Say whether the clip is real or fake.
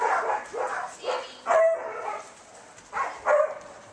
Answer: real